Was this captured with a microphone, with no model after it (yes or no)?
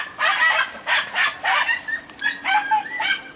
yes